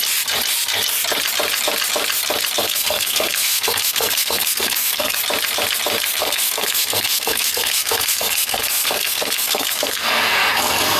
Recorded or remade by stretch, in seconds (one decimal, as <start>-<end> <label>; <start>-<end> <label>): 0.0-2.6 recorded; 2.6-5.2 remade; 5.2-6.2 recorded; 6.2-11.0 remade